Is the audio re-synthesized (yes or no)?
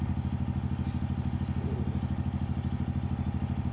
no